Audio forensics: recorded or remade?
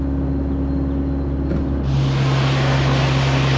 recorded